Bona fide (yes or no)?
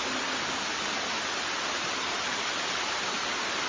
yes